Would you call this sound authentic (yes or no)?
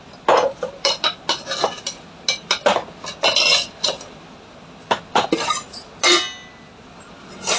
yes